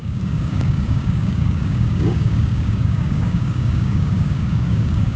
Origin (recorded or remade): remade